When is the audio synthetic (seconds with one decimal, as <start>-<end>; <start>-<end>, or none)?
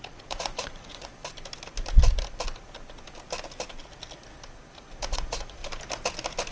0.0-1.1; 5.0-5.6